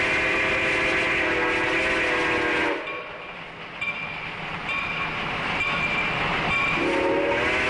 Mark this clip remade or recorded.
recorded